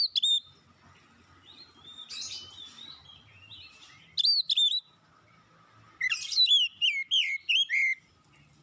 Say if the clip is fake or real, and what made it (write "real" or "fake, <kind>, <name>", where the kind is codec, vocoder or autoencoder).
real